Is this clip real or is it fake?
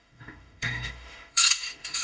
fake